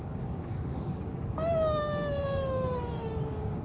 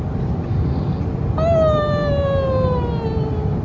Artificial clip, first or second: first